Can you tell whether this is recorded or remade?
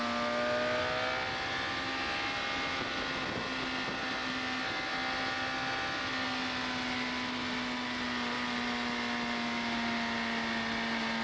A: recorded